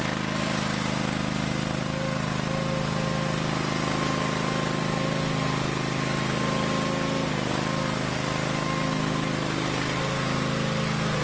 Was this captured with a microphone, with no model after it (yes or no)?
yes